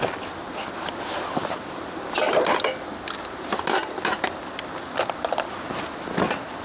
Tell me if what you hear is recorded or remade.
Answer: recorded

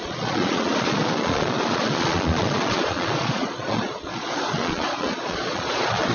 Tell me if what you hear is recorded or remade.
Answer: remade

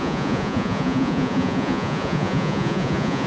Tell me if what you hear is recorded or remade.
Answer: remade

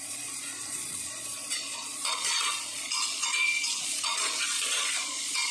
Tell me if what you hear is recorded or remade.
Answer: remade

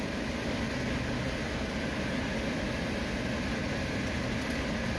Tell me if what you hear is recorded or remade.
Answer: recorded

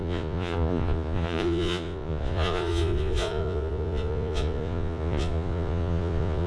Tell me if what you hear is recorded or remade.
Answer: remade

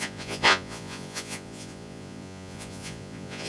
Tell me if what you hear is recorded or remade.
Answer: remade